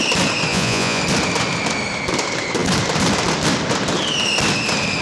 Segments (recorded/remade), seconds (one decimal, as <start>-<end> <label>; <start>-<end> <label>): 0.0-0.5 recorded; 0.5-1.0 remade; 1.0-5.0 recorded